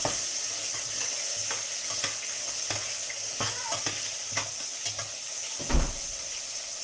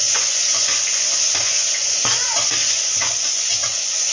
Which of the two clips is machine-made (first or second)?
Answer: second